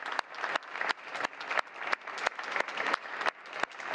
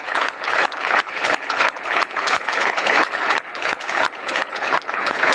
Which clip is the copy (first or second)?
second